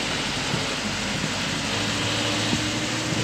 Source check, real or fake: real